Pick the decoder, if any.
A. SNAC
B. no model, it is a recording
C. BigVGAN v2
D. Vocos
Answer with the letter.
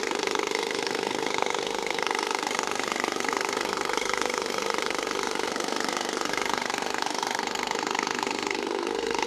A